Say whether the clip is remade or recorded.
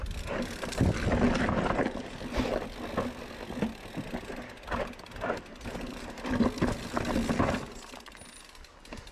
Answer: recorded